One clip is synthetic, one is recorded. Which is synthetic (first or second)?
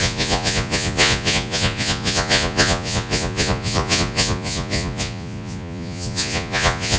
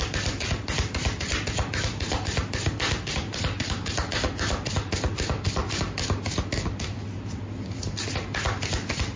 first